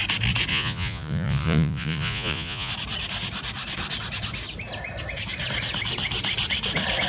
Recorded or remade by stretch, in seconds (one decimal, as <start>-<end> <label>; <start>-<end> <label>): 0.0-0.5 recorded; 0.5-2.7 remade; 2.7-7.1 recorded

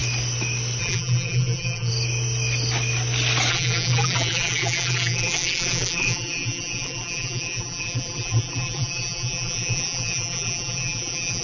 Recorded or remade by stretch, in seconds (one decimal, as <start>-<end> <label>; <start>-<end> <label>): 0.0-0.8 recorded; 0.8-1.9 remade; 1.9-3.5 recorded; 3.5-11.4 remade

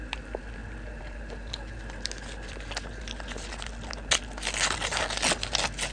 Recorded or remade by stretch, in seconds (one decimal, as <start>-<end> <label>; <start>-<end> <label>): 0.0-5.9 recorded

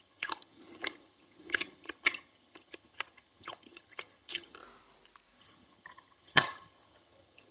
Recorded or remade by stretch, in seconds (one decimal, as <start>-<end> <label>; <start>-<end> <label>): 0.0-4.6 remade; 4.6-5.4 recorded; 5.4-7.5 remade

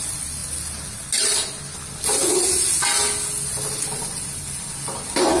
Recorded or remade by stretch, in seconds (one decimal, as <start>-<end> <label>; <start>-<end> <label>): 0.0-5.4 recorded

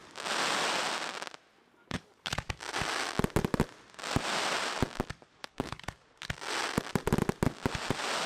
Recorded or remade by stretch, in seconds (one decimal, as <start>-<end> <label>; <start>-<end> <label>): 0.0-1.8 recorded; 1.8-2.6 remade; 2.6-5.4 recorded; 5.4-6.0 remade; 6.0-8.3 recorded